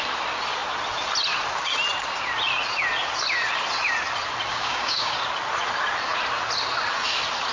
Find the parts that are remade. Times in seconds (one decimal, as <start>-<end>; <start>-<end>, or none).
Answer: 4.5-5.1